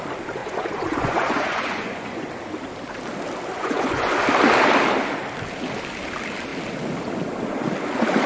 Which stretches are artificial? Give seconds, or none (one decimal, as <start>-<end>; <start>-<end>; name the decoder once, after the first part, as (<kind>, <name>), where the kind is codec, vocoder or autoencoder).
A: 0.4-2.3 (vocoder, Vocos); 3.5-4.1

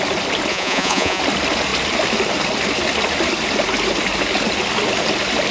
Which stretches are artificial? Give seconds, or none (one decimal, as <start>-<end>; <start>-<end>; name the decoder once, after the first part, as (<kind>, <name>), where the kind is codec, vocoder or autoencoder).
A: 0.5-1.2 (vocoder, Vocos)

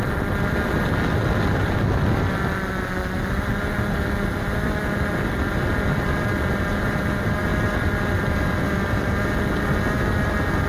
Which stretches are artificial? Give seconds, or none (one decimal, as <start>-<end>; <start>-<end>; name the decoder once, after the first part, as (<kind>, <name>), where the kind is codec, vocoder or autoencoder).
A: none

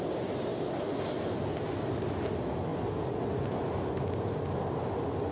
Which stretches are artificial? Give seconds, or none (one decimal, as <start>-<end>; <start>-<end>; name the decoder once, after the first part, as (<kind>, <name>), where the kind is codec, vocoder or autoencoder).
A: none

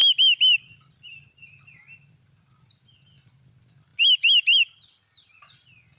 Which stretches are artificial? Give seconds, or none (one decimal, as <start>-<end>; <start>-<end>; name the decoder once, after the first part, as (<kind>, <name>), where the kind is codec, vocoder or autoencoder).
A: none

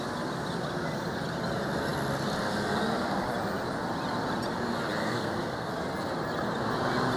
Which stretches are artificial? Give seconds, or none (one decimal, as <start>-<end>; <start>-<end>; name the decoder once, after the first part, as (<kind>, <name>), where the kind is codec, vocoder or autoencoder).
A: 5.0-5.7 (codec, SNAC)

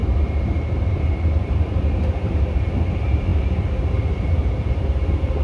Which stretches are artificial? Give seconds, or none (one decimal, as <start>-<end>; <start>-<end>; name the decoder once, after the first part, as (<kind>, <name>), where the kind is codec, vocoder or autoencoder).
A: 0.0-5.4 (vocoder, BigVGAN v2)

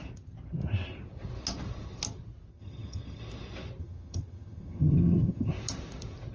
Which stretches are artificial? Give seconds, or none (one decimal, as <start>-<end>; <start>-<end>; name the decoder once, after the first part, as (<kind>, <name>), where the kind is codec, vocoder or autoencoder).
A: 2.5-3.2 (vocoder, HiFi-GAN); 3.8-5.5